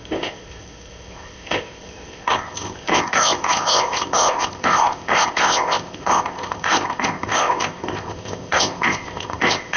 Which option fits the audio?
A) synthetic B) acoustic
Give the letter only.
A